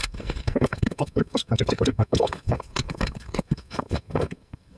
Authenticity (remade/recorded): remade